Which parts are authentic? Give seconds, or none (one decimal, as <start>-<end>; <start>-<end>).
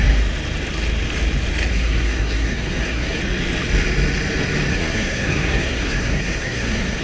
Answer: 0.0-1.7; 3.2-4.7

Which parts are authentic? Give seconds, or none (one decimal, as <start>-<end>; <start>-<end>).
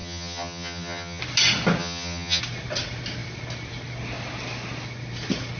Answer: 1.2-1.8; 2.4-5.6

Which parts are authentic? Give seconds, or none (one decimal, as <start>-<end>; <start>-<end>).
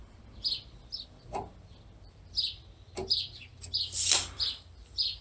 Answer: 3.5-4.2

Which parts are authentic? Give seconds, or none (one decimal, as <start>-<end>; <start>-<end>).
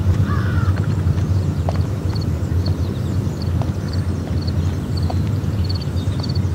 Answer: 3.2-5.1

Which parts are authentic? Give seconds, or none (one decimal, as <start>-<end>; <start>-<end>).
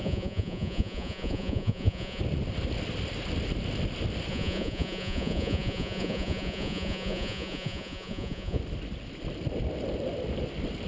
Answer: 2.2-4.3; 8.6-10.9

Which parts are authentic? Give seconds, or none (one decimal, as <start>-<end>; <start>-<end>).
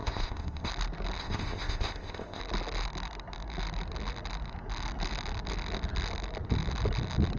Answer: 0.7-1.2; 2.4-7.4